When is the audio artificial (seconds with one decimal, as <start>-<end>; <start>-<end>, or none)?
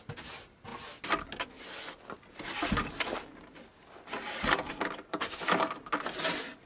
none